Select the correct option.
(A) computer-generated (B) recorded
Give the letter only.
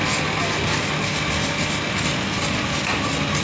B